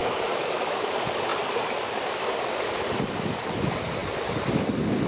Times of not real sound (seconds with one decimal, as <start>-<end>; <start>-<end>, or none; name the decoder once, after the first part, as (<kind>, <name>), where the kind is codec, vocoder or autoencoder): 0.0-0.9 (autoencoder, DAC-VAE)